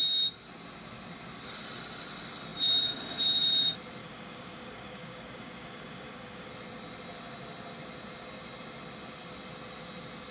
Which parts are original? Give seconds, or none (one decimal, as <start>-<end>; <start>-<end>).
0.0-4.0; 6.5-10.3